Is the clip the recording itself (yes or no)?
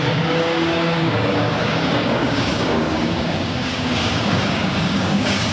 no